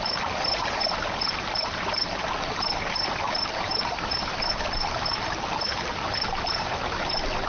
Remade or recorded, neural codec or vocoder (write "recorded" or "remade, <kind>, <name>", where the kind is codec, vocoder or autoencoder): recorded